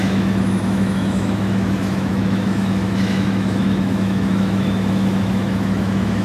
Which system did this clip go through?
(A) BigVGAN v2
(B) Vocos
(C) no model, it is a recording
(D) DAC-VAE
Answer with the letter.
D